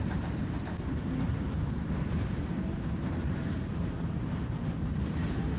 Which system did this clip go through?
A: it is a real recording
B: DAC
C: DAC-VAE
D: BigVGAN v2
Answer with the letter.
D